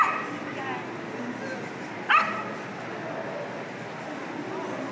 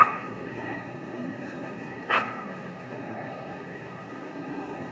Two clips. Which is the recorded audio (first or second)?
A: first